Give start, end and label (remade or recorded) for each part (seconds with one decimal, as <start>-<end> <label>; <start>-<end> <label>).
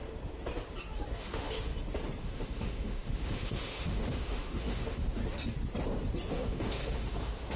0.0-1.2 recorded; 1.2-1.7 remade; 1.7-2.2 recorded; 2.2-5.2 remade; 5.2-6.3 recorded; 6.3-7.6 remade